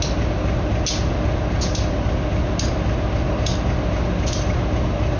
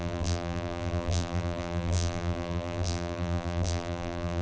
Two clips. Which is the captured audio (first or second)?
first